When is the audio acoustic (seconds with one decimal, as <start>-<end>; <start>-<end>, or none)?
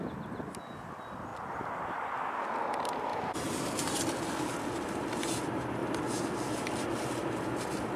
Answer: 0.0-3.1; 3.9-8.0